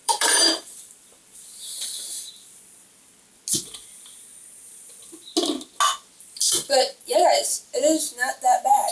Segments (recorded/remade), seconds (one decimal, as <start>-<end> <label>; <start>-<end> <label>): 0.0-2.3 remade; 2.3-8.9 recorded